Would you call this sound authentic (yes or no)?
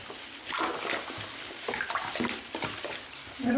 no